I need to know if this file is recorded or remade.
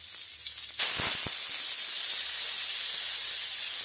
recorded